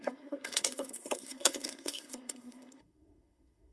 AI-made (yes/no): yes